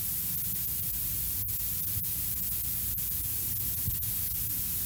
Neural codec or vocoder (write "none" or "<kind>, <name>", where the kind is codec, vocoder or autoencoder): none